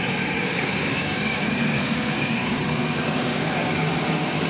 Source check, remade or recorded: remade